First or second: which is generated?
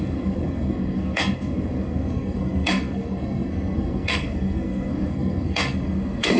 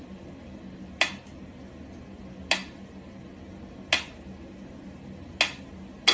first